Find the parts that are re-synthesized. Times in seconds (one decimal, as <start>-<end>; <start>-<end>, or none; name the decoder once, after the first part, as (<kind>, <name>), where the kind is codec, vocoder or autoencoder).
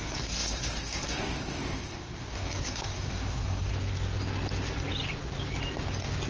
0.0-3.7 (codec, SNAC)